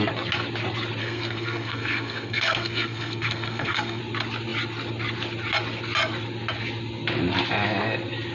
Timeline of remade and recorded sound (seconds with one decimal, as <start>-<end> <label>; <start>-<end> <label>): 0.0-1.0 recorded; 1.0-4.0 remade; 4.0-8.3 recorded